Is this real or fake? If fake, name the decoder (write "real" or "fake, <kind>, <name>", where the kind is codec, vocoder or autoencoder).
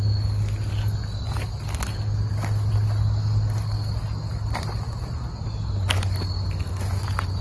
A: real